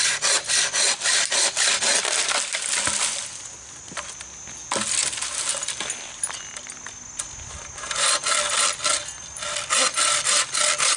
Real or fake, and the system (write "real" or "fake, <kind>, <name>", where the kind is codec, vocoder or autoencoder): real